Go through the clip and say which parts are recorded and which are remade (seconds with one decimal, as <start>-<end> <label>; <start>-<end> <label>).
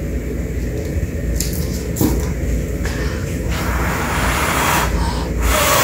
0.0-3.2 recorded; 3.2-5.1 remade; 5.1-5.8 recorded